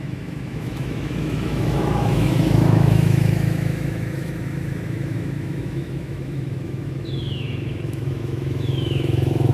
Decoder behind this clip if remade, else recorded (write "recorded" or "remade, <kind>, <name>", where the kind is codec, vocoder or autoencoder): remade, autoencoder, DAC-VAE